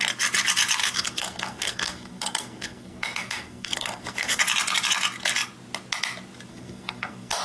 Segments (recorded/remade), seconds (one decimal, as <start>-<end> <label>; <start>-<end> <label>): 0.0-0.8 recorded; 0.8-4.4 remade; 4.4-6.5 recorded; 6.5-7.4 remade